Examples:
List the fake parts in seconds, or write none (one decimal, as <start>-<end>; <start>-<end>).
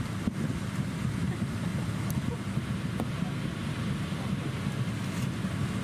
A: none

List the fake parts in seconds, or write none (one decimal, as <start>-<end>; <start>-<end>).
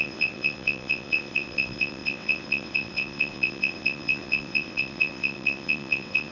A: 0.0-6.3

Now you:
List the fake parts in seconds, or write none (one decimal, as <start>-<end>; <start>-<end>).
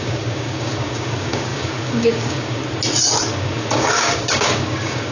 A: 0.0-2.6; 3.3-5.1